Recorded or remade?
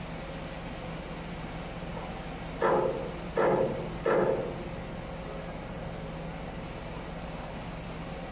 recorded